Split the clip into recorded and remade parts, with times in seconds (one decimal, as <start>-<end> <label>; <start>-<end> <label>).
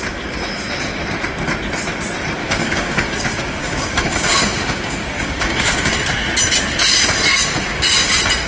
0.0-2.4 recorded; 2.4-6.0 remade; 6.0-7.3 recorded; 7.3-8.1 remade; 8.1-8.5 recorded